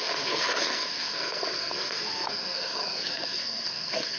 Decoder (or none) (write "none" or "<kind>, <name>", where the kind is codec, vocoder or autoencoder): codec, SNAC